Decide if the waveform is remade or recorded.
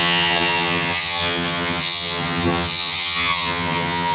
remade